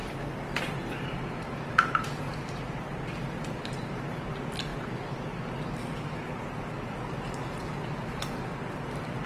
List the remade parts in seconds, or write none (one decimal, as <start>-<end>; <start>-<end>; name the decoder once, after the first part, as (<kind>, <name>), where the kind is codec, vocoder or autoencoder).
none